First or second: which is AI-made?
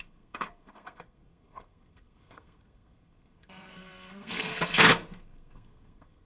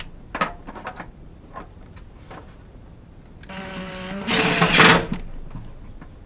first